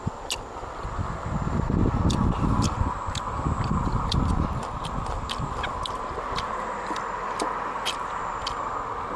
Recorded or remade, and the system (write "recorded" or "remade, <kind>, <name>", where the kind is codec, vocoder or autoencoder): recorded